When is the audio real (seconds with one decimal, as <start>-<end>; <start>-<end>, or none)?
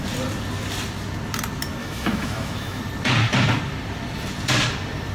0.0-1.8; 2.8-5.1